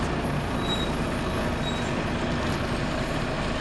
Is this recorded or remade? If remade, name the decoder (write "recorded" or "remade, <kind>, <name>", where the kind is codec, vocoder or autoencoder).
recorded